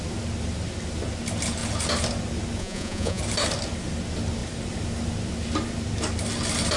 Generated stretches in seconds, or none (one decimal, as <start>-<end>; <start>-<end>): 2.6-3.2